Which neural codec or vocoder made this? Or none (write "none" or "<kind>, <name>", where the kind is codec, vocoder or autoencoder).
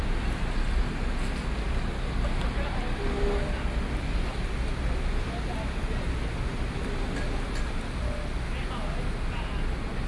none